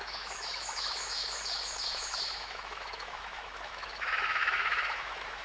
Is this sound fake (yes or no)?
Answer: yes